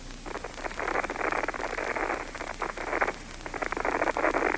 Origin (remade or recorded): recorded